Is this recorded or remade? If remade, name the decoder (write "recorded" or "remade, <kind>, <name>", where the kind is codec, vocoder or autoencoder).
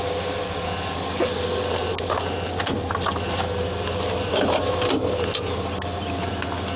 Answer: recorded